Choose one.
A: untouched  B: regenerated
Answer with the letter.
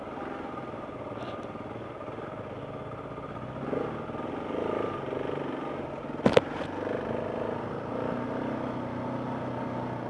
A